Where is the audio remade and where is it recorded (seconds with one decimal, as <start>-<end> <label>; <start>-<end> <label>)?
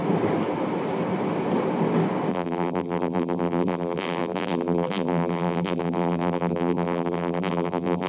0.0-2.3 recorded; 2.3-8.1 remade